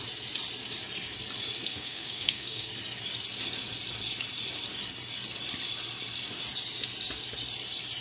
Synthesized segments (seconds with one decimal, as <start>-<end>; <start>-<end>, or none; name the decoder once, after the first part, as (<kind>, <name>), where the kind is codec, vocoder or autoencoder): 1.7-2.7 (codec, SNAC)

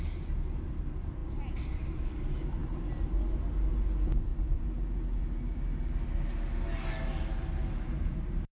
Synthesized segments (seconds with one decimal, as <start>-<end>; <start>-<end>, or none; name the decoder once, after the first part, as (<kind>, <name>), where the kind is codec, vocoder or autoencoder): none

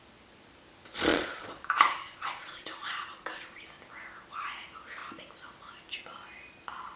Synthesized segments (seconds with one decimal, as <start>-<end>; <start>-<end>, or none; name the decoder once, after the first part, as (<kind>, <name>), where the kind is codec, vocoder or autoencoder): 1.1-3.6 (vocoder, Vocos)